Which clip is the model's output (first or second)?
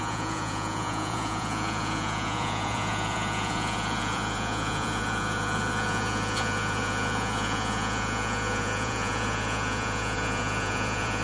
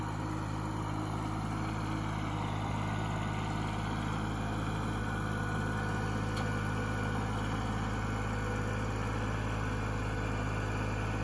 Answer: first